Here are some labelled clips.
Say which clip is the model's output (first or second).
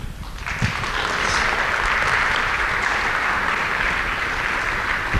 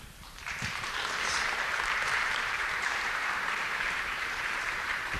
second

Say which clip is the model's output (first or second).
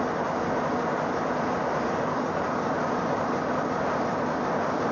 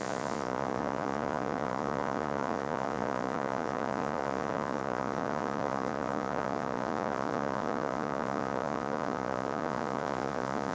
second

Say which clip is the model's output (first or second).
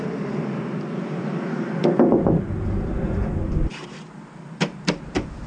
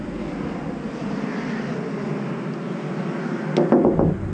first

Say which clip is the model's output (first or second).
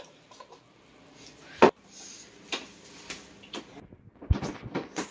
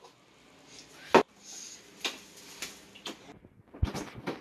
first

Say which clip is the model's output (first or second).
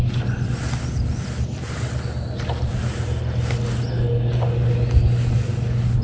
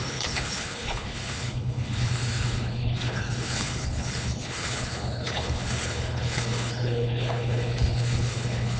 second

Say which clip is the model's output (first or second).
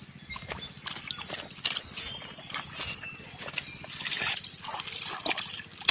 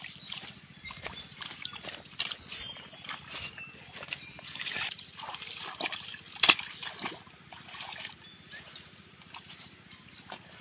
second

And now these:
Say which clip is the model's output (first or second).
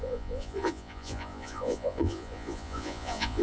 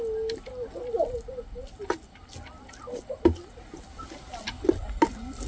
first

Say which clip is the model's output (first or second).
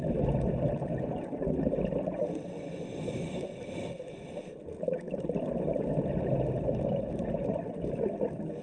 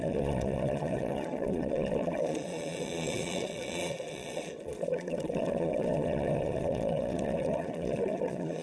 second